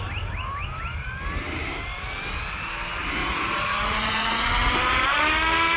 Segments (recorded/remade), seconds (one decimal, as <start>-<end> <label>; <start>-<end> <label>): 0.0-3.2 recorded; 3.2-4.7 remade; 4.7-5.8 recorded